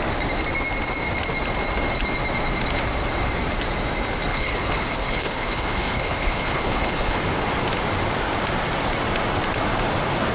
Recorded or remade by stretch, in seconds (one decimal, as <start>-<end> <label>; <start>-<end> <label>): 0.0-4.3 recorded; 4.3-7.2 remade; 7.2-10.3 recorded